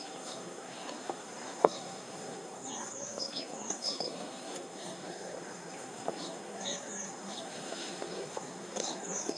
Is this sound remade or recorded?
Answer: remade